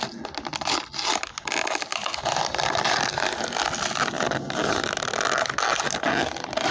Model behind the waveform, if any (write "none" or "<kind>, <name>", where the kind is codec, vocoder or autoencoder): none